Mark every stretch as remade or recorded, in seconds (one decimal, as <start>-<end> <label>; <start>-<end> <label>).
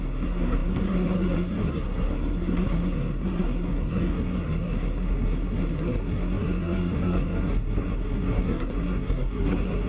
0.0-9.9 remade